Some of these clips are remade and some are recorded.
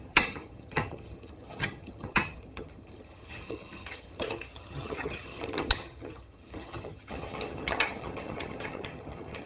remade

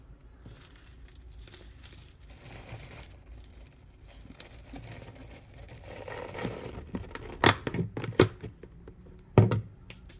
recorded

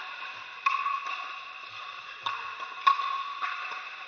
recorded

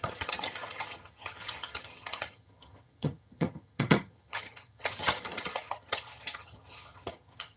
remade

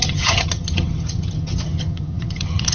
remade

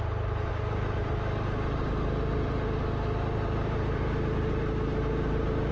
recorded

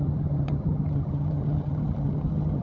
remade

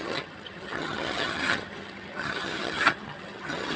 remade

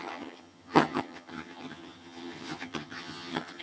remade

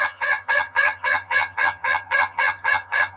remade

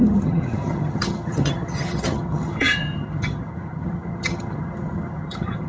remade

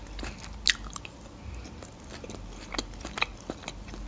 recorded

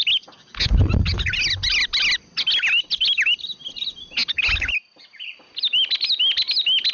recorded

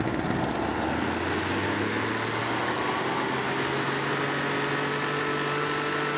recorded